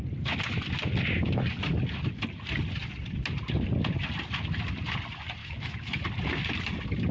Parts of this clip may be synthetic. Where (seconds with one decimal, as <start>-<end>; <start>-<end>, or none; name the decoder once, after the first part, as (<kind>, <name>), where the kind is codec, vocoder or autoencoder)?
5.4-6.0 (autoencoder, DAC-VAE)